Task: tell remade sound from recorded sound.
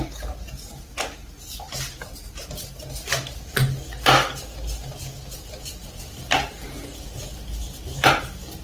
recorded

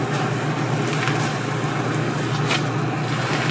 recorded